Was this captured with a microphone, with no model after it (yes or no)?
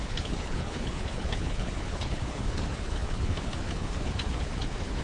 no